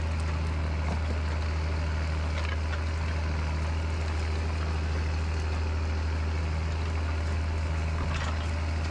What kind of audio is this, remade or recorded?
recorded